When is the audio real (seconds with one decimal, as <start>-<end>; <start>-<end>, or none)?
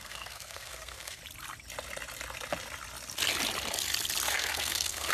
1.2-4.3